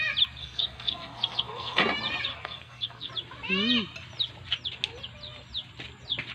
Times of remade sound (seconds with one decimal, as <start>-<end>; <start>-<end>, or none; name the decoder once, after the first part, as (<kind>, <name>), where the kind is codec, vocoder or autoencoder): 0.4-1.8 (codec, SNAC); 2.3-3.1

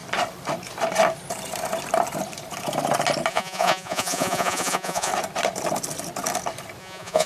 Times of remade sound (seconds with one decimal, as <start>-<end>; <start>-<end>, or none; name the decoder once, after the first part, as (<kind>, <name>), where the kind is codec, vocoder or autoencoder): 3.3-5.1 (vocoder, Vocos); 6.8-7.3

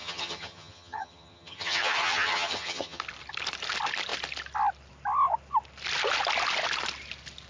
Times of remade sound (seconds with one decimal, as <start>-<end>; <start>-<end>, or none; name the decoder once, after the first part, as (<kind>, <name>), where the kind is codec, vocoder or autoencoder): 0.0-3.0 (vocoder, HiFi-GAN)

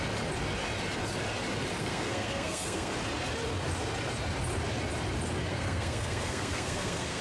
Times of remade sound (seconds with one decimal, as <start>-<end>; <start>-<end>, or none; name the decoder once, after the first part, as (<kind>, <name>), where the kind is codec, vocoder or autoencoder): 1.8-2.9 (codec, SNAC); 5.5-7.2

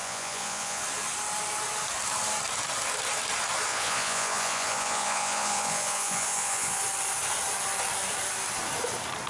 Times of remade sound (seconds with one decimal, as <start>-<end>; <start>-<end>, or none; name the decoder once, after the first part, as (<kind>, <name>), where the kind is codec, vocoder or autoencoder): 0.0-0.8 (vocoder, Vocos); 3.7-6.8

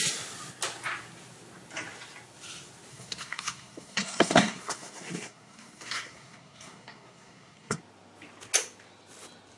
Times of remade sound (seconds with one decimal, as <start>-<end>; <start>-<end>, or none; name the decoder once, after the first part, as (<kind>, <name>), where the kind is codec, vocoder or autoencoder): 2.9-7.8 (codec, SNAC)

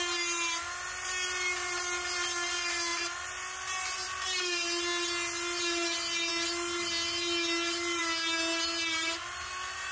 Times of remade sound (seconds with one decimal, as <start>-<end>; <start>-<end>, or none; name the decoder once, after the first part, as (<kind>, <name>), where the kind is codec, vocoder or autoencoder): none

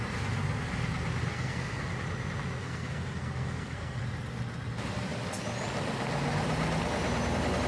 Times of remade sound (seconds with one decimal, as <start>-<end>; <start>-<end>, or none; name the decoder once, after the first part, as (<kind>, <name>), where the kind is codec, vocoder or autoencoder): 1.3-1.9 (codec, SNAC); 2.6-4.0